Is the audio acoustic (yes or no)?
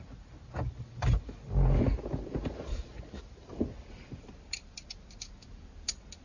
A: yes